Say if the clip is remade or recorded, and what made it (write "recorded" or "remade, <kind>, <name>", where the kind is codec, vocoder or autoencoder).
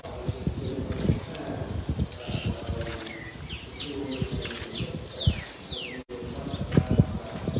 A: recorded